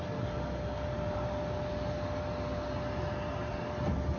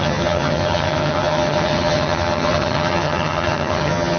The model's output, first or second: second